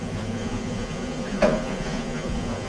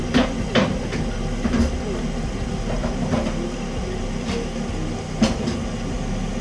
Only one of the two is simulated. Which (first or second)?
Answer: first